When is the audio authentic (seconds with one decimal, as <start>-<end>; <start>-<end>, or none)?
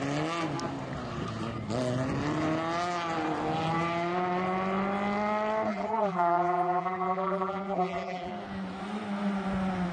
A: 0.0-5.7; 8.3-9.9